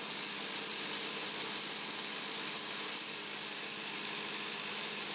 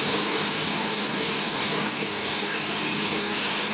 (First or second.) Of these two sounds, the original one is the first